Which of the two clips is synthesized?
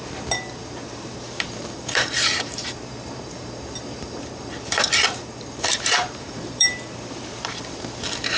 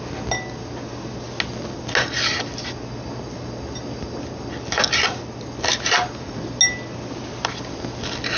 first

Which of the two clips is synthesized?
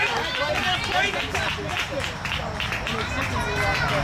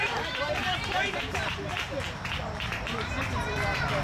second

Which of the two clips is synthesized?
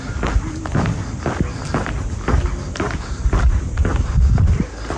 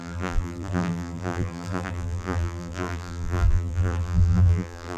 second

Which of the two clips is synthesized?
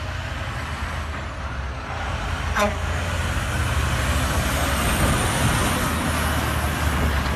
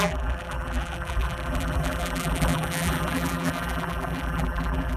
second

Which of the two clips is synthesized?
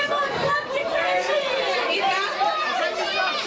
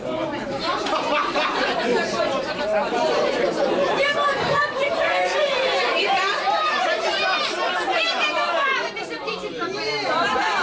second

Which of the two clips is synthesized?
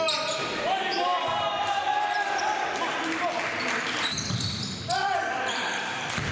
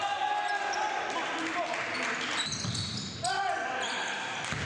first